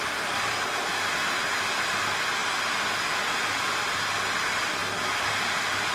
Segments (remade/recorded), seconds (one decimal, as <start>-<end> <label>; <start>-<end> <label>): 0.0-0.9 remade; 0.9-1.6 recorded; 1.6-2.4 remade; 2.4-3.4 recorded; 3.4-4.8 remade; 4.8-5.3 recorded; 5.3-5.9 remade